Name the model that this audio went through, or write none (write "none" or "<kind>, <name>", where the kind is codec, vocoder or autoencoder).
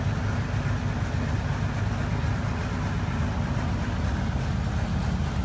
none